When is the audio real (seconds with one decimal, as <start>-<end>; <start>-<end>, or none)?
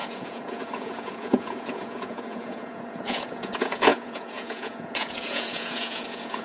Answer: none